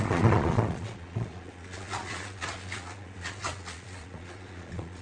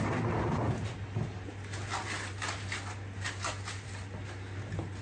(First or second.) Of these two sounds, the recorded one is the second